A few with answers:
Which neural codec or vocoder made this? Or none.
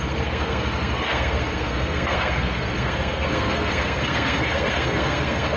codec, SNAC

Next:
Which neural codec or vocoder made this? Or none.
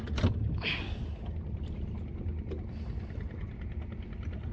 none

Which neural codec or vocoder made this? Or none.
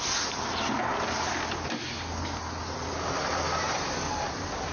none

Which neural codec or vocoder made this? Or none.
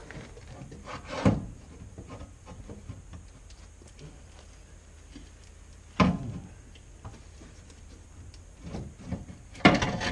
none